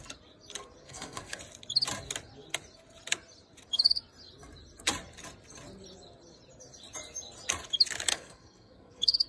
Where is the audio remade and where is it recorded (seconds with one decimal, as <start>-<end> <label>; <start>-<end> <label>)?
0.0-0.8 recorded; 0.8-1.4 remade; 1.4-8.1 recorded; 8.1-9.3 remade